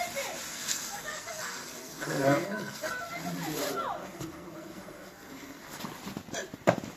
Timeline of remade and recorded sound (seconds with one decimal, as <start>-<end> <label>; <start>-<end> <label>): 0.0-0.5 recorded; 0.5-2.9 remade; 2.9-4.0 recorded; 4.0-5.8 remade; 5.8-7.0 recorded